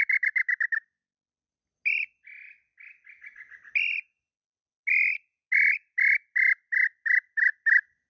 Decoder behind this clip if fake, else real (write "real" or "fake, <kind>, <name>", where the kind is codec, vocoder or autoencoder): real